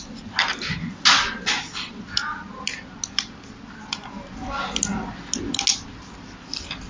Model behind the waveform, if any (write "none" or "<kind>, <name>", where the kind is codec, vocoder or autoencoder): none